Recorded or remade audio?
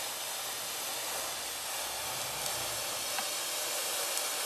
recorded